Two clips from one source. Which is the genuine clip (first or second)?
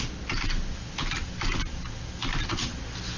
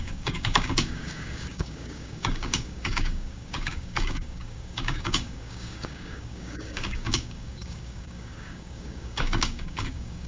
first